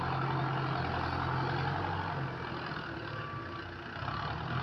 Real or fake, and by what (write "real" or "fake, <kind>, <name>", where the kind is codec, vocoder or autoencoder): real